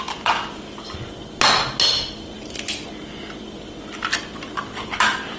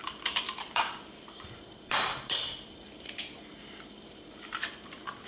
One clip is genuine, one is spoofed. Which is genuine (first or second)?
first